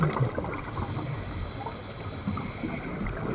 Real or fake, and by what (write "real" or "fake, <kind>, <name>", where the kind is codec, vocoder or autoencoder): real